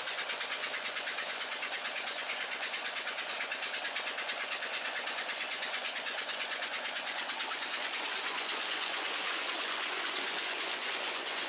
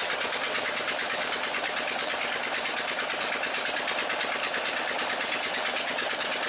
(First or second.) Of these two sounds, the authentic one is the second